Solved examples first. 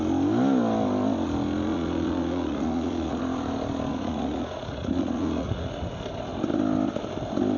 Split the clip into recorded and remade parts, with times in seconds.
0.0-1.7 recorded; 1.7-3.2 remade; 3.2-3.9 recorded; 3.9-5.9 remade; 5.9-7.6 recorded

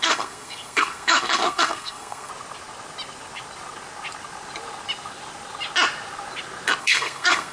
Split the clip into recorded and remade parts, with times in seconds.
0.0-2.3 remade; 2.3-6.8 recorded; 6.8-7.5 remade

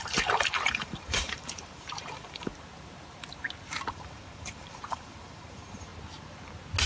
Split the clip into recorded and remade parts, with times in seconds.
0.0-2.5 remade; 2.5-3.9 recorded; 3.9-5.9 remade; 5.9-6.9 recorded

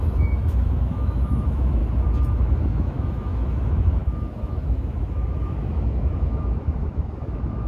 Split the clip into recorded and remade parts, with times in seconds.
0.0-1.8 remade; 1.8-2.4 recorded; 2.4-7.7 remade

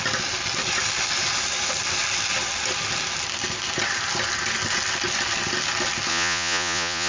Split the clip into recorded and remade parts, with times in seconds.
0.0-6.1 recorded; 6.1-7.1 remade